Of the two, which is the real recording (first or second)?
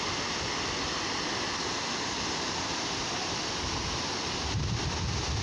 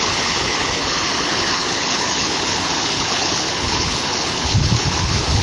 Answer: first